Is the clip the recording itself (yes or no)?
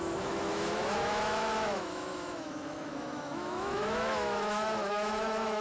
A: no